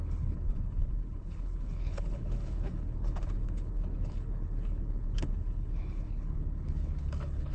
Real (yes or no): no